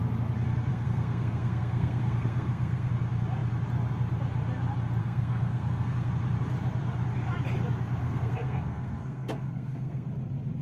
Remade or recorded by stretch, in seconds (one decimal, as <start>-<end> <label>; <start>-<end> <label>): 0.0-0.7 recorded; 0.7-2.9 remade; 2.9-5.0 recorded; 5.0-6.1 remade; 6.1-8.0 recorded; 8.0-10.1 remade; 10.1-10.6 recorded